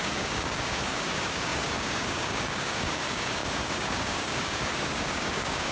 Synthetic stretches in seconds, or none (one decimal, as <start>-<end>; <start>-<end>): 0.0-5.7